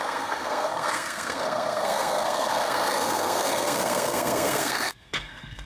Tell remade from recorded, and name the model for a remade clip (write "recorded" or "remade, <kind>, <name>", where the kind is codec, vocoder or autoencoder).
remade, codec, SNAC